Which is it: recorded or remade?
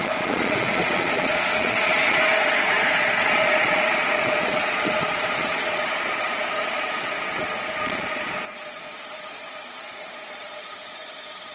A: remade